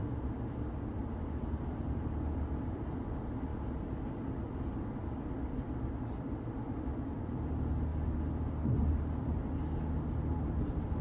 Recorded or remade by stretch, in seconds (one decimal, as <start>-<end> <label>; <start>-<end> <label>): 0.0-3.5 remade; 3.5-4.8 recorded; 4.8-7.9 remade; 7.9-9.9 recorded; 9.9-11.0 remade